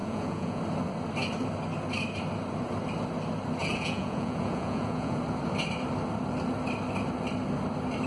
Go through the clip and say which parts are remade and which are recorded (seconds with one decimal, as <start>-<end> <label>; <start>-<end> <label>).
0.0-0.6 remade; 0.6-3.6 recorded; 3.6-5.2 remade; 5.2-8.1 recorded